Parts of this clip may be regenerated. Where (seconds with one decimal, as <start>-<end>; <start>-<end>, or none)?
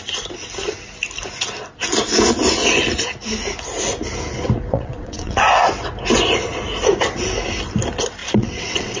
4.7-5.4; 8.2-9.0